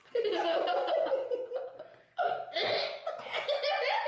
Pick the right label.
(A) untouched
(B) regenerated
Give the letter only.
B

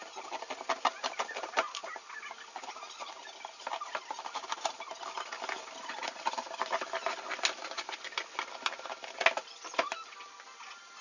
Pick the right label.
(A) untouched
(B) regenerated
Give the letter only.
A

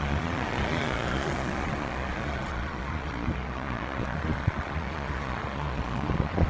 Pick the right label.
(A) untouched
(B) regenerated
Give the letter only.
B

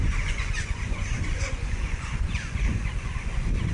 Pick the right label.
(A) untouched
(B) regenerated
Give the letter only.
B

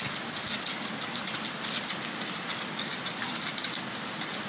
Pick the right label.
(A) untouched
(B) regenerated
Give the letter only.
A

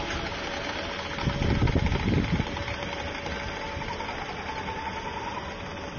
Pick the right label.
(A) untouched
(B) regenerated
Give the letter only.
A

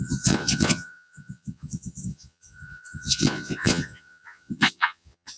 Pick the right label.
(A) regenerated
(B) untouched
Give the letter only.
A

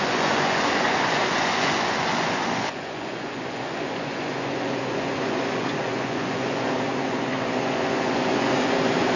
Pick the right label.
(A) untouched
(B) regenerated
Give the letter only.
B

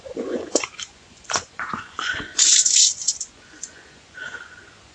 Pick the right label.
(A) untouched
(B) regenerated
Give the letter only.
B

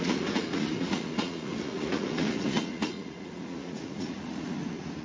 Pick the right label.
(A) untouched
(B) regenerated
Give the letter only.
B